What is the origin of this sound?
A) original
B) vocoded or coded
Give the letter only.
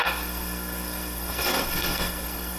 B